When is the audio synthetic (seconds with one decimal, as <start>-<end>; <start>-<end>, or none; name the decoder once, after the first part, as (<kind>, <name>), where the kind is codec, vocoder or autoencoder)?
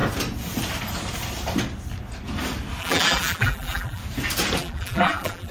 2.8-4.0 (vocoder, BigVGAN v2); 4.6-5.5